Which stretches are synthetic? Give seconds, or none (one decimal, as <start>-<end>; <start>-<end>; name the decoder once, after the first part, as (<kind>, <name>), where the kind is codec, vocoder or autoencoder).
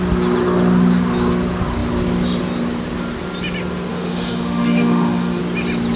3.9-5.4 (autoencoder, DAC-VAE)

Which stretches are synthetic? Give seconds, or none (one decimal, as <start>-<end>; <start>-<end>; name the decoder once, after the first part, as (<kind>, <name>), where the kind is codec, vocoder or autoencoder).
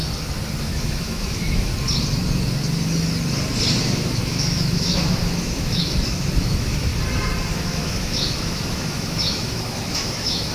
0.6-1.7 (autoencoder, DAC-VAE); 3.8-6.9; 7.5-10.5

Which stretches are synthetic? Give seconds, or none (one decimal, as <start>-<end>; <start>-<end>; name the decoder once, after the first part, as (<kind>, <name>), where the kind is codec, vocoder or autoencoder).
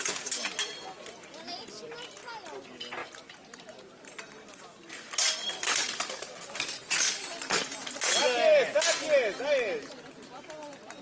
none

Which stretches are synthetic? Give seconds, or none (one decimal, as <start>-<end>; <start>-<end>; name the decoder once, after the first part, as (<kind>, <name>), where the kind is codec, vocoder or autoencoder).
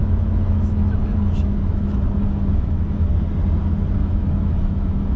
0.0-3.1 (autoencoder, DAC-VAE); 4.0-5.2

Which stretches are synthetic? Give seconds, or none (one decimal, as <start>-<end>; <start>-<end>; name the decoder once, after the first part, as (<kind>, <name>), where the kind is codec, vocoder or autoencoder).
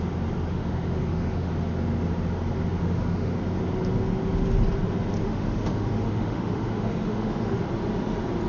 0.5-1.5 (autoencoder, DAC-VAE); 2.8-3.4; 5.2-7.6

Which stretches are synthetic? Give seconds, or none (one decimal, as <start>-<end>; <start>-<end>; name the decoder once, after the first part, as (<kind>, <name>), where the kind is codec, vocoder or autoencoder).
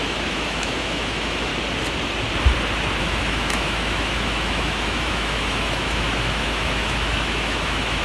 0.0-1.5 (autoencoder, DAC-VAE); 3.0-8.0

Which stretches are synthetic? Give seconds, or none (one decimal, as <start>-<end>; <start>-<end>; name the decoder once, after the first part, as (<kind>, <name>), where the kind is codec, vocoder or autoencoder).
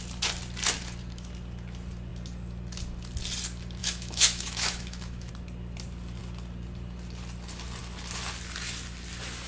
3.8-5.3 (autoencoder, DAC-VAE)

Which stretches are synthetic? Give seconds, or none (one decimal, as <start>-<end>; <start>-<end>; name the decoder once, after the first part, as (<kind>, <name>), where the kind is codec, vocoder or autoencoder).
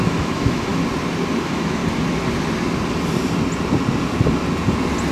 0.0-0.7 (autoencoder, DAC-VAE); 1.4-1.8